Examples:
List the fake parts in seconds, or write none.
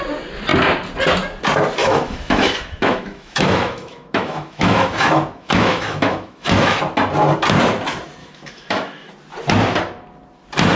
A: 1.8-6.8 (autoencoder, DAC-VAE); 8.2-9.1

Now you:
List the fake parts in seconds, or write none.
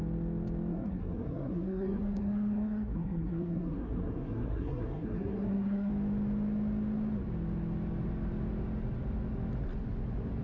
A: 0.7-5.9 (codec, SNAC)